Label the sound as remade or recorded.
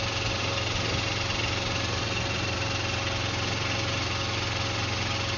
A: recorded